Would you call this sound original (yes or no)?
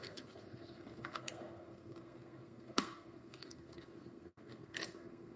no